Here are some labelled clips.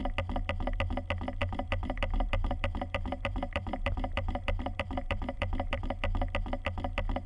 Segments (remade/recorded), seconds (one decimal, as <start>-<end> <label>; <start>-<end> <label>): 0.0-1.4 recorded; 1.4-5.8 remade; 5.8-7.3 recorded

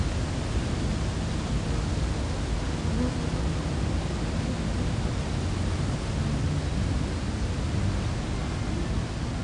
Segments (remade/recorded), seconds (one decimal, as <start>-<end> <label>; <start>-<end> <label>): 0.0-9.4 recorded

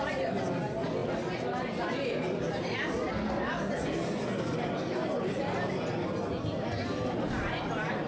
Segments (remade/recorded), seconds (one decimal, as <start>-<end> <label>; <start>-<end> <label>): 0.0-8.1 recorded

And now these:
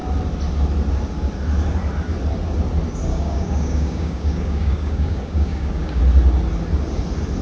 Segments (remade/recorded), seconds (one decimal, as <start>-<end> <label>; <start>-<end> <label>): 0.0-3.1 recorded; 3.1-6.0 remade; 6.0-7.4 recorded

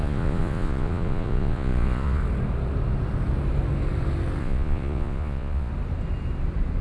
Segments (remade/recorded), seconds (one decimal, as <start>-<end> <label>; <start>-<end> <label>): 0.0-2.2 remade; 2.2-4.4 recorded; 4.4-5.7 remade; 5.7-6.8 recorded

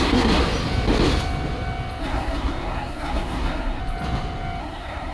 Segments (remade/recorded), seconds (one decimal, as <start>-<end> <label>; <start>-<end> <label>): 0.0-0.4 remade; 0.4-2.0 recorded; 2.0-3.8 remade; 3.8-4.6 recorded; 4.6-5.1 remade